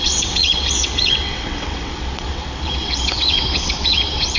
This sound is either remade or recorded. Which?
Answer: remade